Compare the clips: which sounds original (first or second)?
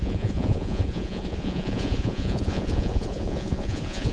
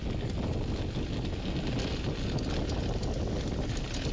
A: second